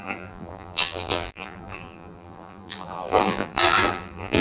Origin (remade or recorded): remade